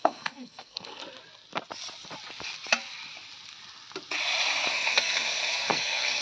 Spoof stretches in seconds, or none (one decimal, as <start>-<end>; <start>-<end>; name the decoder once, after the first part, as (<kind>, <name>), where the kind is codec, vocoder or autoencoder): 0.0-1.0 (codec, SNAC); 4.7-6.2